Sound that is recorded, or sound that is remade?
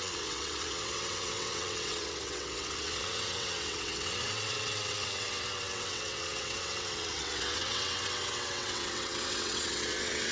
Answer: remade